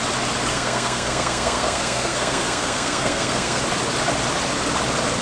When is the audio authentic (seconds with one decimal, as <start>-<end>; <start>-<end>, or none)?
0.0-0.5; 3.6-5.2